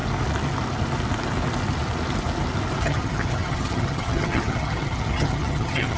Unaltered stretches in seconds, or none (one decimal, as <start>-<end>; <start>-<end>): 0.0-2.8